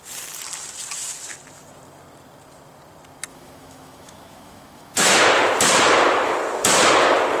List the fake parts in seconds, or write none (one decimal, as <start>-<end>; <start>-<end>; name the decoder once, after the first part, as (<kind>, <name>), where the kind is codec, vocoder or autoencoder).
3.3-5.2 (autoencoder, DAC-VAE)